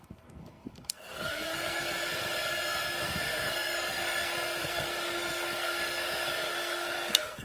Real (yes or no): no